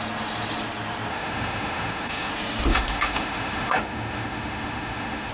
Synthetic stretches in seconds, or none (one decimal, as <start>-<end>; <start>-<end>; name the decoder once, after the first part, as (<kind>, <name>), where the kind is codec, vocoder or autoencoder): 1.1-2.3 (autoencoder, DAC-VAE); 2.7-5.3